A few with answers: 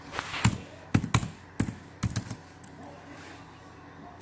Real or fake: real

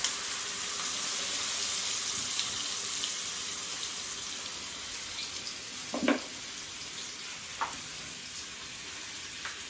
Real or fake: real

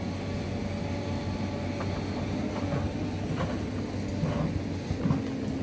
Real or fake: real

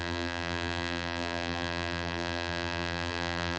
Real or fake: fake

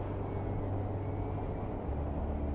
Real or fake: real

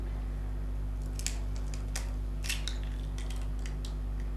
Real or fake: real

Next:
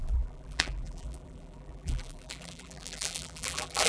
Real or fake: fake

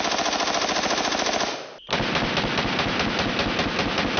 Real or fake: real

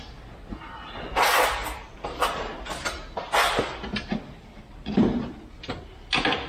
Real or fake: real